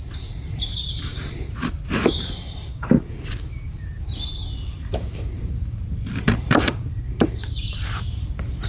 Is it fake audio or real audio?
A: fake